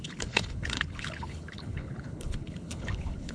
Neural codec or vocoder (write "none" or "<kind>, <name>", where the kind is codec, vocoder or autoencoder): codec, HILCodec